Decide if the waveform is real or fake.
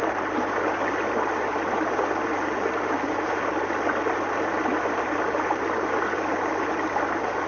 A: real